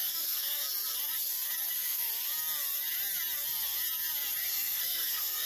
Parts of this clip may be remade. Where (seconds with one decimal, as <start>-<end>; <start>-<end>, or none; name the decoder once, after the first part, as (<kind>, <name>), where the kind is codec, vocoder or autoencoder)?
0.0-0.6 (codec, SNAC); 1.7-2.1; 4.5-5.5